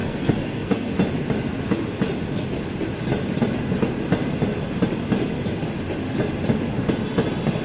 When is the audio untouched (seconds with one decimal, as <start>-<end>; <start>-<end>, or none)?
0.9-7.6